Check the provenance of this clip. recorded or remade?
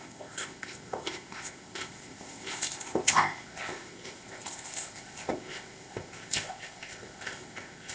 remade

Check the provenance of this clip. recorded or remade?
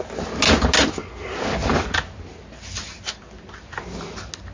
recorded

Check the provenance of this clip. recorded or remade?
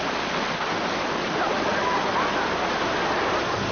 recorded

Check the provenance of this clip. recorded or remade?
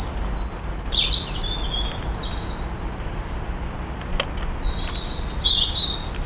recorded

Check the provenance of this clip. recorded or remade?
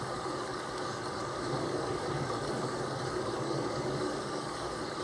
remade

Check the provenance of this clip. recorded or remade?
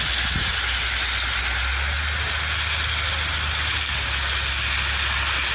recorded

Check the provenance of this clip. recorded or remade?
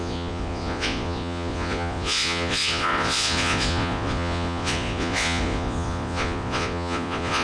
remade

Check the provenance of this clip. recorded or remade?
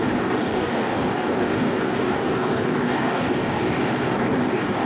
remade